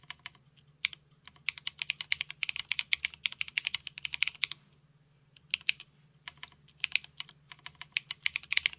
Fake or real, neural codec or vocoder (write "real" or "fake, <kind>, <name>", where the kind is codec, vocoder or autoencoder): real